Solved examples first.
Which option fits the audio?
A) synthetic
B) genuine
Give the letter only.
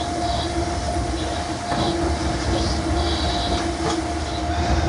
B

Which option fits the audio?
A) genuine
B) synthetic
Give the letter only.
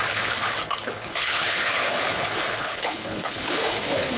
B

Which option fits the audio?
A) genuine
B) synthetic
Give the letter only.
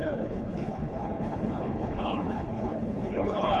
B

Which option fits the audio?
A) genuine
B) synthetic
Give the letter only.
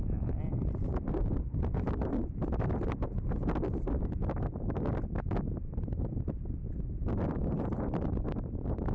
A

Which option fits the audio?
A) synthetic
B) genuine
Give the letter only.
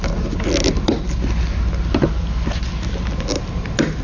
B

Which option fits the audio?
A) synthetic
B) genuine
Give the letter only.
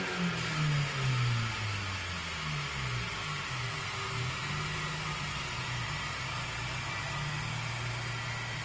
B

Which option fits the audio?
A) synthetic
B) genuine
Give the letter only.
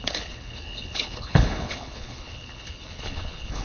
A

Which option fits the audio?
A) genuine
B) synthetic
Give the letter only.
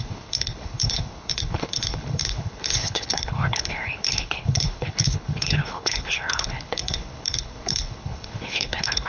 B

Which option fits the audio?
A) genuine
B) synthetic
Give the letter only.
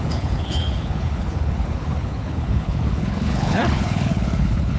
B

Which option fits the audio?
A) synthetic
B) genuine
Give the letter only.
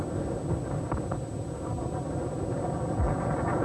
B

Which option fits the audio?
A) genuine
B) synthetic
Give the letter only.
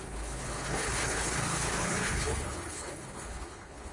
B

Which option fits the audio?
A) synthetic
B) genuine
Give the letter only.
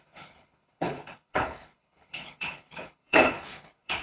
A